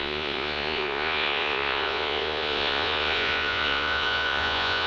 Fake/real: fake